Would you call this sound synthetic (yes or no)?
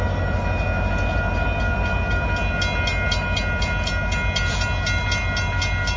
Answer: no